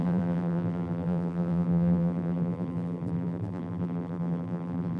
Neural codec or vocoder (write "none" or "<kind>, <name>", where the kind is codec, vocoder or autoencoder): vocoder, BigVGAN v2